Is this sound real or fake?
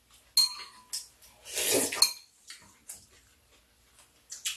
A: real